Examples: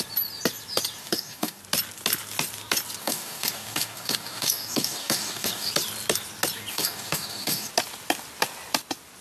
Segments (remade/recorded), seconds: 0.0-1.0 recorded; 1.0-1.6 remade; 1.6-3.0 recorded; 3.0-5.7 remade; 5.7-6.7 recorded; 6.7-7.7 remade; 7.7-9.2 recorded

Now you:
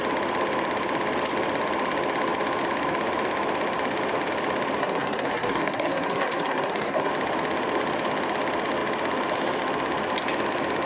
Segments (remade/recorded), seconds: 0.0-4.8 recorded; 4.8-7.1 remade; 7.1-10.9 recorded

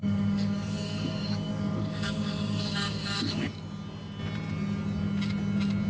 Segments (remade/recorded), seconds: 0.0-3.5 remade; 3.5-5.9 recorded

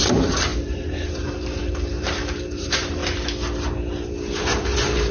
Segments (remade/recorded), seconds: 0.0-3.0 remade; 3.0-4.4 recorded; 4.4-5.1 remade

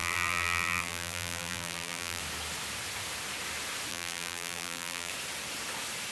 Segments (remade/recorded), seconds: 0.0-2.2 remade; 2.2-3.9 recorded; 3.9-5.1 remade; 5.1-6.1 recorded

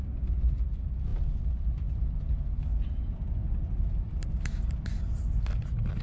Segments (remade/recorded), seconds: 0.0-6.0 recorded